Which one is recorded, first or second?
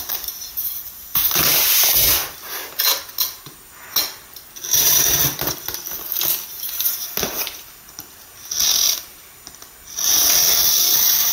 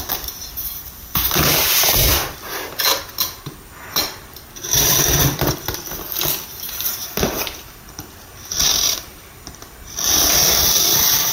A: first